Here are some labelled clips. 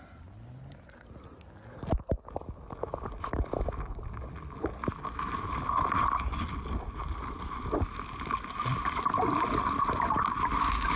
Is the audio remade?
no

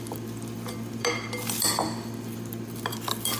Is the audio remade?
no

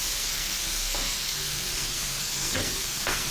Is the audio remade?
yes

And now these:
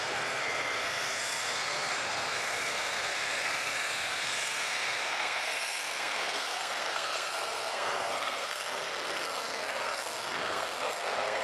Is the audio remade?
yes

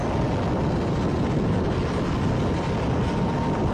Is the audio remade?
no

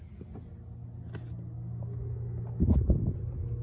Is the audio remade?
no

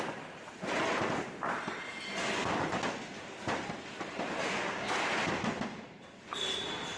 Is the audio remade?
no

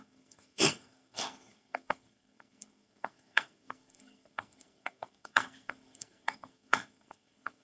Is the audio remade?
yes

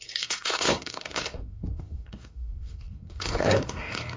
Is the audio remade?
yes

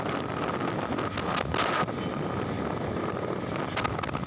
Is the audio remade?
no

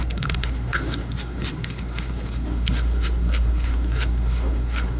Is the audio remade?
yes